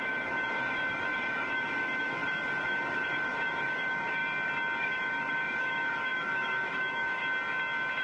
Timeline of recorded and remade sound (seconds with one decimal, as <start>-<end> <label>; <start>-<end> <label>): 0.0-4.2 remade; 4.2-4.8 recorded; 4.8-7.2 remade; 7.2-8.0 recorded